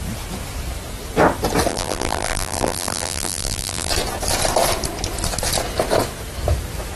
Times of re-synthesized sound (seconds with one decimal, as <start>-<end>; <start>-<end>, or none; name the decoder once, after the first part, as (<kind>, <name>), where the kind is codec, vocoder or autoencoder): 1.7-3.9 (vocoder, BigVGAN v2)